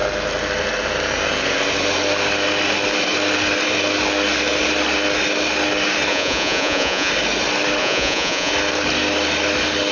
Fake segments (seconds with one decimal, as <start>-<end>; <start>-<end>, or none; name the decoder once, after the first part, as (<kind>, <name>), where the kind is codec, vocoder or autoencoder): 6.1-7.1 (vocoder, Vocos); 7.8-8.5